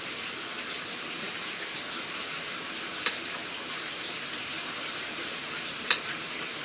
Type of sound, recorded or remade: remade